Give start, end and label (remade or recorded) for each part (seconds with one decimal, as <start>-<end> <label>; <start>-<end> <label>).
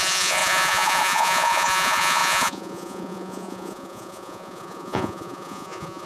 0.0-6.1 remade